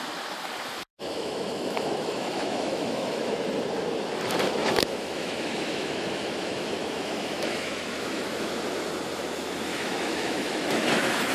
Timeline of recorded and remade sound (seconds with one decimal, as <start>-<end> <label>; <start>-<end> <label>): 0.0-0.9 recorded; 0.9-3.3 remade; 3.3-4.6 recorded; 4.6-8.5 remade; 8.5-9.7 recorded; 9.7-11.3 remade